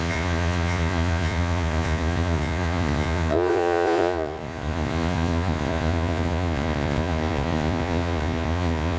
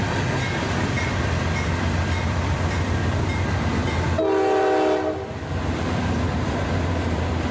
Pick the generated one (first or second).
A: first